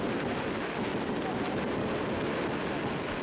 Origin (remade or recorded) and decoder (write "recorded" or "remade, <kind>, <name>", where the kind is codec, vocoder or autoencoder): recorded